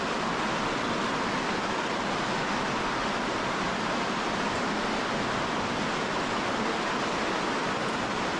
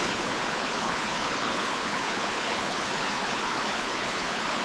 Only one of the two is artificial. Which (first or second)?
second